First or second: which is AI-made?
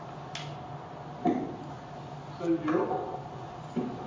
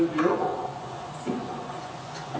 second